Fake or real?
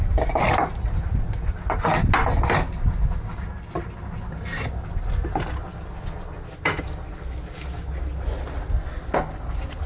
real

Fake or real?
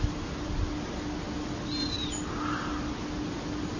real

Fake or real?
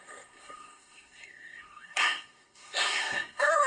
fake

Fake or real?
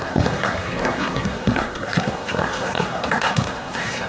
fake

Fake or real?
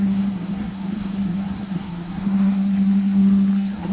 fake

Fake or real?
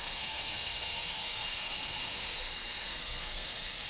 fake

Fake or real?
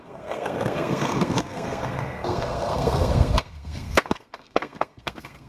fake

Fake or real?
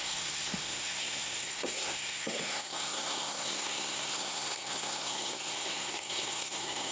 fake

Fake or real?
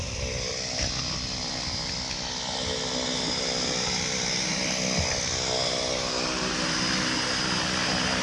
real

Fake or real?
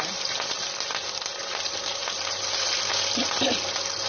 real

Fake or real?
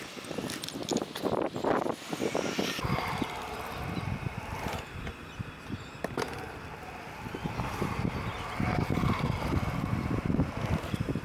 real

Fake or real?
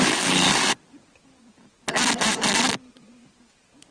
real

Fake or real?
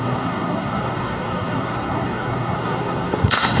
fake